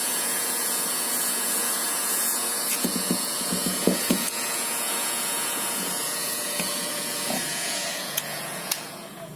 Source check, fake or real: fake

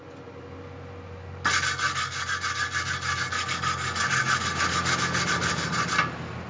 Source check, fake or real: real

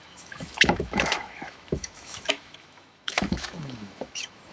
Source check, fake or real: fake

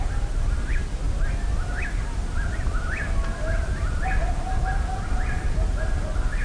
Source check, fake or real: real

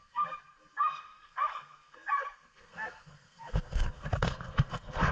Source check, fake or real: fake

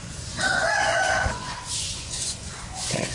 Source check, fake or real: fake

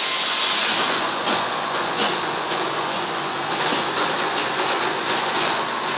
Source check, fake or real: fake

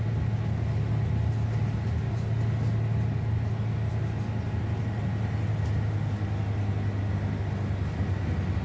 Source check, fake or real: real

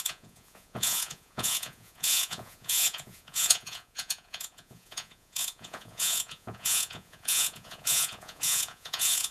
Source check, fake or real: fake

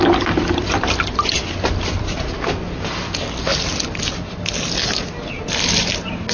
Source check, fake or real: real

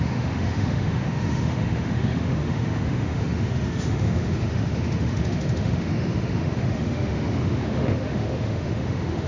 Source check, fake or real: fake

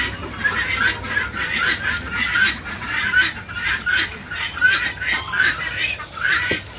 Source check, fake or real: real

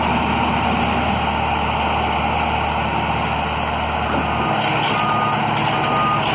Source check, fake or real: real